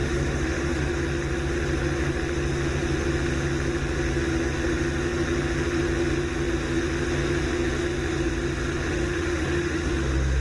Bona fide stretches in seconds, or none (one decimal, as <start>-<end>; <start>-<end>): 0.9-8.9